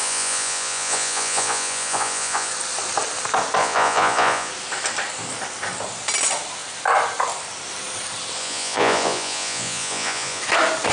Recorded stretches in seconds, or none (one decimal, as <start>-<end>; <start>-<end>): 2.5-3.6; 4.5-8.4; 10.4-10.9